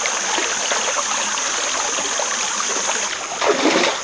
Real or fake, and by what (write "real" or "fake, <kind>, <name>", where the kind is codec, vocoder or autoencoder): real